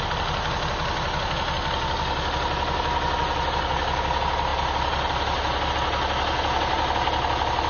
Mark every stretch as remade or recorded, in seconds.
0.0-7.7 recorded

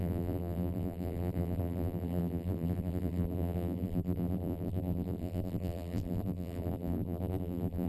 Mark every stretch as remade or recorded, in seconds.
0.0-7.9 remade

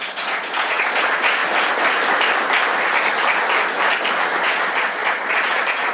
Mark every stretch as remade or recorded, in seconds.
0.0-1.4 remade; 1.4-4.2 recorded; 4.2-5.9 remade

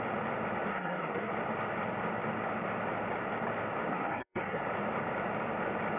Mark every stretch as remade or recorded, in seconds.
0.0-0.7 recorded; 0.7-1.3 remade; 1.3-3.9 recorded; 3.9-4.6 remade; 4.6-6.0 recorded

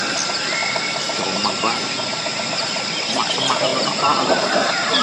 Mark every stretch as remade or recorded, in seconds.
0.0-5.0 recorded

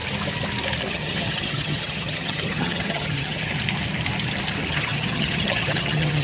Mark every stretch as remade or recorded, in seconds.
0.0-0.9 recorded; 0.9-3.5 remade; 3.5-4.7 recorded; 4.7-6.2 remade